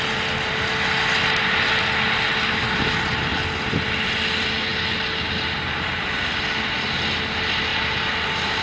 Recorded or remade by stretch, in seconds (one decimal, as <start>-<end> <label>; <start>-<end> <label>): 0.0-7.7 recorded; 7.7-8.6 remade